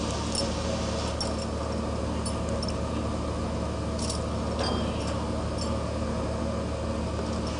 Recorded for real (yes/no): yes